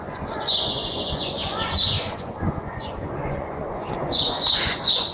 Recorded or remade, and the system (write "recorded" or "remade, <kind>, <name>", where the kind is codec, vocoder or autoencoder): remade, vocoder, Vocos